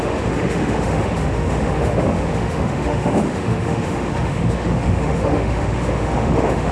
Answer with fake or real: fake